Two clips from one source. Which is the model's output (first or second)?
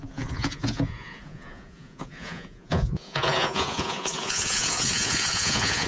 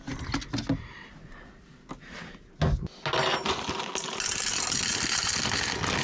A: first